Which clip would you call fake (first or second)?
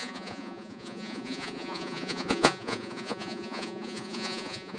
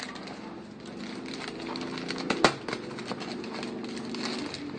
first